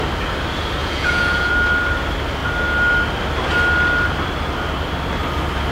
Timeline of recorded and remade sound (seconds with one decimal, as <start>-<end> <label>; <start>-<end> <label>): 0.0-0.8 recorded; 0.8-1.5 remade; 1.5-5.7 recorded